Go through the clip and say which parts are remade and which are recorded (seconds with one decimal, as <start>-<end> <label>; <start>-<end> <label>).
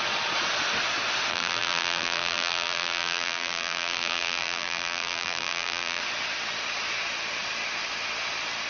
0.0-1.3 recorded; 1.3-6.0 remade; 6.0-8.7 recorded